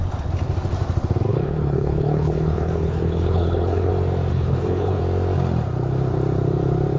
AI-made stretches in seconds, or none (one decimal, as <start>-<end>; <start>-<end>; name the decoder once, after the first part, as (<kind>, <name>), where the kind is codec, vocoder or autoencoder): 1.3-3.9 (codec, HILCodec); 4.3-5.0